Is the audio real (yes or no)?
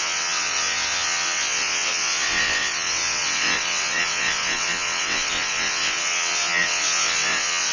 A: no